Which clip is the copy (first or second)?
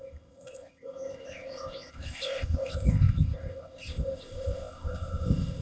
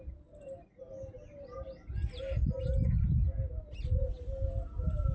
first